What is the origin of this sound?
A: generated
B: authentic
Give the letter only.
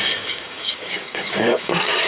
A